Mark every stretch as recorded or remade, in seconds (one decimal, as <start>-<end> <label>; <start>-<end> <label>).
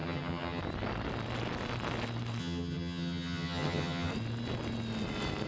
0.0-0.6 remade; 0.6-2.4 recorded; 2.4-4.1 remade; 4.1-5.5 recorded